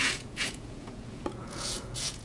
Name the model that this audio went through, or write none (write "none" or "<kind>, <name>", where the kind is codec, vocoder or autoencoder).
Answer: vocoder, Vocos